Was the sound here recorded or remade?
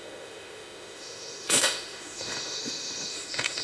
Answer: remade